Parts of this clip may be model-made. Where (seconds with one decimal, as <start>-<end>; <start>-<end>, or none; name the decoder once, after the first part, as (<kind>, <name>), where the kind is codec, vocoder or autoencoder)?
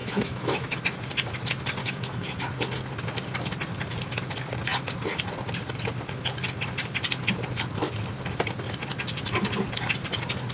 0.0-0.8 (autoencoder, DAC-VAE); 1.8-2.4